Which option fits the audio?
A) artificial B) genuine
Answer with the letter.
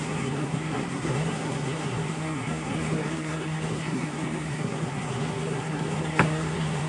A